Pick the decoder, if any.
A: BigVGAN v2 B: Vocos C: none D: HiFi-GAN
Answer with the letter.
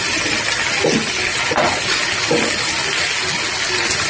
C